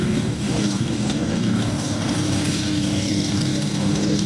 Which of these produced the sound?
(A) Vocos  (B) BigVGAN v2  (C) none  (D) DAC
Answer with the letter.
D